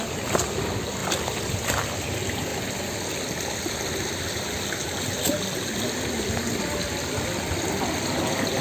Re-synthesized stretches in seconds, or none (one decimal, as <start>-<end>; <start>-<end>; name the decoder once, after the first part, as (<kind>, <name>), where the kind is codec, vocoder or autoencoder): none